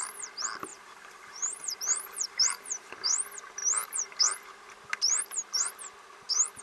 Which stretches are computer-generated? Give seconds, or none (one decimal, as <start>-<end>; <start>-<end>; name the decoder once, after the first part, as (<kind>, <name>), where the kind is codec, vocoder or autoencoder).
0.7-2.9 (vocoder, BigVGAN v2)